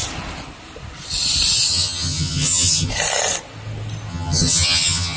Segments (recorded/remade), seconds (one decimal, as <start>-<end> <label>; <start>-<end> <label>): 0.0-1.7 recorded; 1.7-2.9 remade; 2.9-4.1 recorded; 4.1-5.2 remade